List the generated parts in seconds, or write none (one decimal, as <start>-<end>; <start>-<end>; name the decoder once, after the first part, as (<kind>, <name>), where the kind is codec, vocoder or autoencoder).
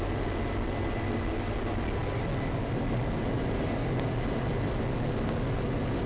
none